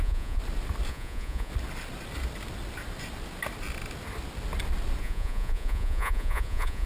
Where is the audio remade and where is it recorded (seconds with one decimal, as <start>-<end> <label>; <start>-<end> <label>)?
0.0-0.4 remade; 0.4-0.9 recorded; 0.9-1.5 remade; 1.5-5.0 recorded; 5.0-6.9 remade